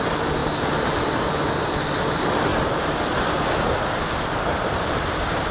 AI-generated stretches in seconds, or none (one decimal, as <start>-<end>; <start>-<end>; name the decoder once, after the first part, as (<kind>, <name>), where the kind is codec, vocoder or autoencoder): 0.0-0.4 (vocoder, BigVGAN v2); 2.0-2.5; 3.6-5.5

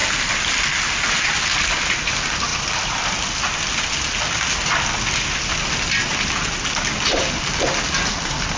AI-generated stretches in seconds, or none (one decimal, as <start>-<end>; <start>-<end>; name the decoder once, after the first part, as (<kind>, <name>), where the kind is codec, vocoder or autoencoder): 0.0-1.4 (vocoder, BigVGAN v2)